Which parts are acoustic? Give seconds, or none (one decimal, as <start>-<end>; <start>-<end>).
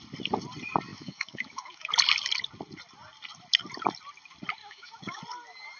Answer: 0.0-0.9; 1.9-4.6; 5.2-5.8